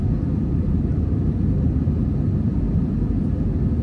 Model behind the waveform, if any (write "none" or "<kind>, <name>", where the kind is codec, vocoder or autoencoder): none